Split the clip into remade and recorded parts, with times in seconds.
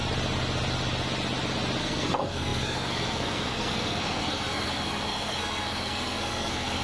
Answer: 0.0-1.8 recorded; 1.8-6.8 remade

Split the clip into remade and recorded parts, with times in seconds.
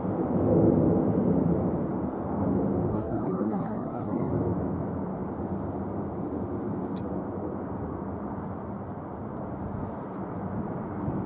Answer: 0.0-2.9 recorded; 2.9-4.3 remade; 4.3-11.3 recorded